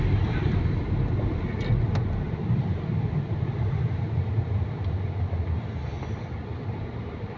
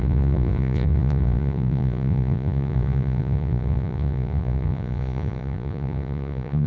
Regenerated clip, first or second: second